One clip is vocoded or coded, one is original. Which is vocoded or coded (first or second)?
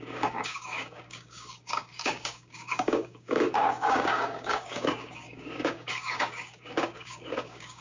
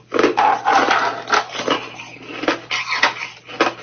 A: first